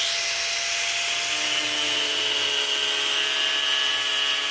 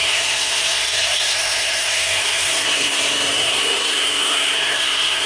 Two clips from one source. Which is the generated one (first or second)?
second